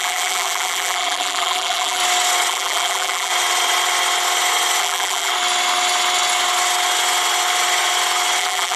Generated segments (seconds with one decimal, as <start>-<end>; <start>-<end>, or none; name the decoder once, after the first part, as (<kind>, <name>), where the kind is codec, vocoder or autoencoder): 0.0-2.0 (vocoder, BigVGAN v2); 2.5-3.3; 4.8-5.3; 8.4-8.8